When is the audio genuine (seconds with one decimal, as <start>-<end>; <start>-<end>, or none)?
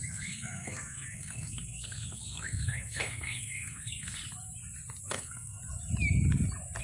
4.2-5.0; 5.6-6.8